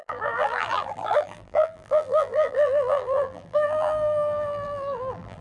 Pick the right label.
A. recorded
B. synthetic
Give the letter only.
B